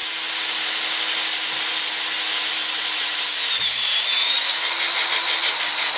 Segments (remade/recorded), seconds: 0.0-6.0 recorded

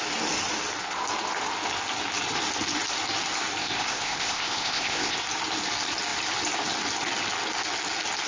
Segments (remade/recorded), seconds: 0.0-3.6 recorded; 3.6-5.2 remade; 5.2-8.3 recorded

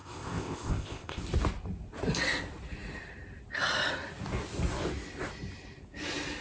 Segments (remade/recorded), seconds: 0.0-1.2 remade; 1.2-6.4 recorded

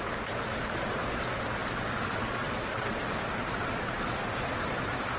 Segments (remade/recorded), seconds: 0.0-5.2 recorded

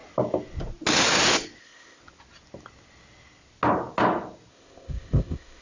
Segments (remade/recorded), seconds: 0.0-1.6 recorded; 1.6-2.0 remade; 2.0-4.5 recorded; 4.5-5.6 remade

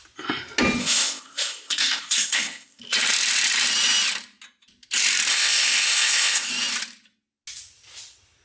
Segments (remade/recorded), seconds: 0.0-0.8 recorded; 0.8-2.8 remade; 2.8-5.3 recorded; 5.3-6.5 remade; 6.5-8.4 recorded

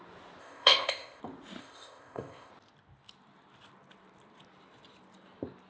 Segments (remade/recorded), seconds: 0.0-0.4 recorded; 0.4-1.2 remade; 1.2-1.6 recorded; 1.6-2.5 remade; 2.5-5.7 recorded

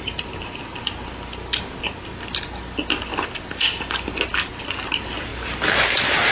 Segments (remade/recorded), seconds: 0.0-6.3 recorded